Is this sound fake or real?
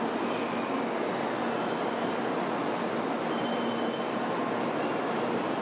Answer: real